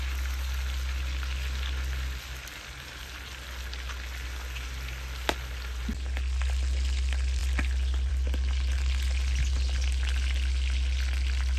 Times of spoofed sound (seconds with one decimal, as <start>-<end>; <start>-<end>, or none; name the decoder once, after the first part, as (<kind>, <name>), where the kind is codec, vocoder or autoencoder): none